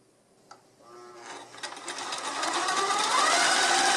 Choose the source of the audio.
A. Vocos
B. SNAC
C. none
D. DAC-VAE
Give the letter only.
C